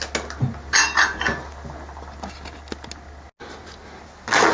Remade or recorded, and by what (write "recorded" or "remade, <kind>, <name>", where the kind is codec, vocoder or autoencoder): recorded